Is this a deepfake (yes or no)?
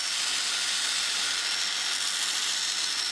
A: no